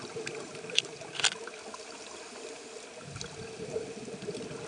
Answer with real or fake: real